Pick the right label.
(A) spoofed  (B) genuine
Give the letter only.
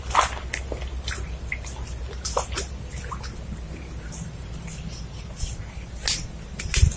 B